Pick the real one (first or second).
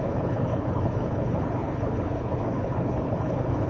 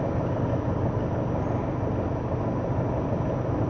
second